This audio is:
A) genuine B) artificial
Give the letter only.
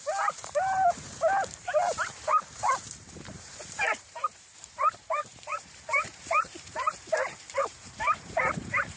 B